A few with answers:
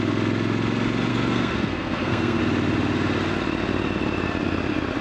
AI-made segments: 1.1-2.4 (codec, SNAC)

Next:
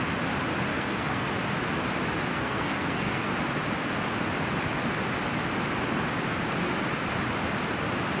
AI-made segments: 0.7-1.3 (codec, SNAC); 2.3-3.3

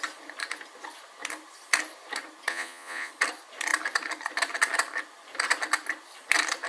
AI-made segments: 2.5-3.1 (vocoder, Vocos)

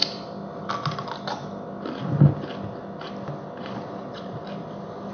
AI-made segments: 3.6-4.4 (vocoder, Vocos)